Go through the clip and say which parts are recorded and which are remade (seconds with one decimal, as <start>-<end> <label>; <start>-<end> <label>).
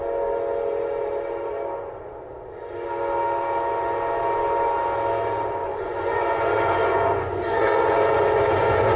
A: 0.0-5.6 recorded; 5.6-9.0 remade